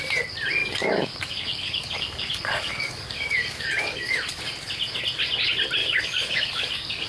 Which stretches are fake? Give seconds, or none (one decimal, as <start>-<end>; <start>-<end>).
0.6-4.4; 5.8-7.1